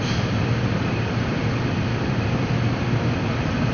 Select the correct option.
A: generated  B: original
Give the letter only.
B